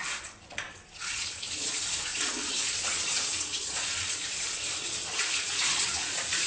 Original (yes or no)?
no